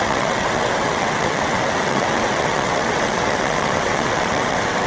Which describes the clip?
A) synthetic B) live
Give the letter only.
A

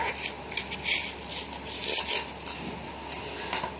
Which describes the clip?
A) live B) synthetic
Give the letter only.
A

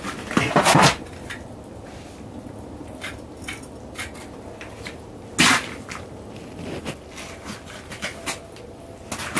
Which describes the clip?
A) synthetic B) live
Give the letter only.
B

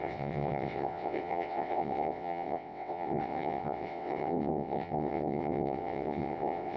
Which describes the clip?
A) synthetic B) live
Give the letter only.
A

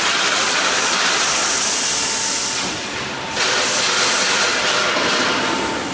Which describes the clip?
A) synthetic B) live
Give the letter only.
B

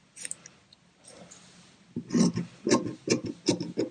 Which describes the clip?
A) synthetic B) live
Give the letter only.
B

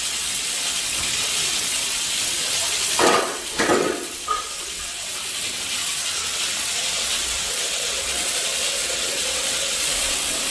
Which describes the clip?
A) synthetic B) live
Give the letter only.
A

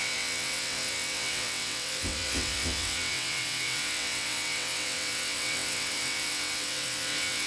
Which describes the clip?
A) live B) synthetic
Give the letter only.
B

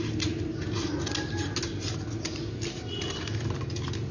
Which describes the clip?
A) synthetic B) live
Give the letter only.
B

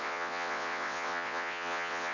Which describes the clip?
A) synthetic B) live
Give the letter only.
A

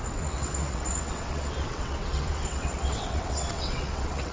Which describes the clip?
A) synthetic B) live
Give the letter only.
A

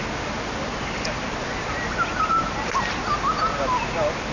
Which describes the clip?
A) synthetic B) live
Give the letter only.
B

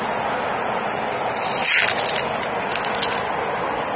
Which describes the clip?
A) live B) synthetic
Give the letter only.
A